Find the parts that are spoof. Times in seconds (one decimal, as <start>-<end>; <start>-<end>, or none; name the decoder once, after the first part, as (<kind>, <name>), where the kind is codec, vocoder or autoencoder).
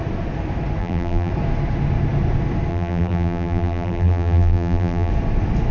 0.8-1.3 (vocoder, BigVGAN v2); 2.7-5.1